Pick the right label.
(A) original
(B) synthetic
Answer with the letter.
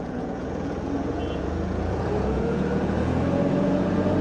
B